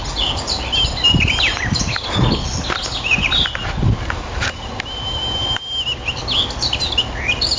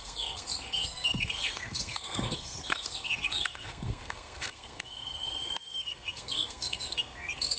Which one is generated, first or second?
second